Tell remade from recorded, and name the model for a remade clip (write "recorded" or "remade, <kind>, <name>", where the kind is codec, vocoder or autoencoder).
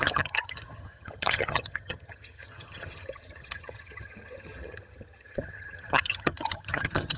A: remade, vocoder, HiFi-GAN